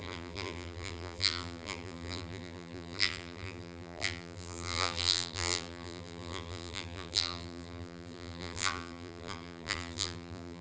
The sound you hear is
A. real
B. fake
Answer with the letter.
B